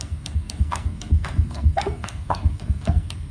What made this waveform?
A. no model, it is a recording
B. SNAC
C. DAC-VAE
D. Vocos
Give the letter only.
B